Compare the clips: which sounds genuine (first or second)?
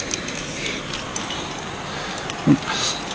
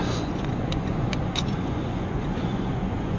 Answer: first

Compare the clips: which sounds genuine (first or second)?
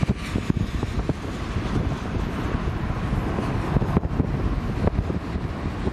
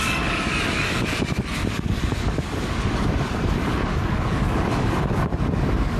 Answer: first